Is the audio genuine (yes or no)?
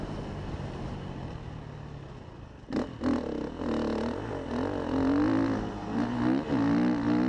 yes